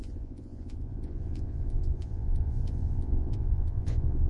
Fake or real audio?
fake